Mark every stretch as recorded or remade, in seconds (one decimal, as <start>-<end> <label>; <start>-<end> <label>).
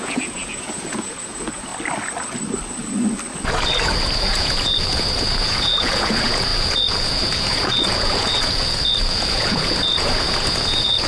0.0-1.7 remade; 1.7-3.4 recorded; 3.4-11.1 remade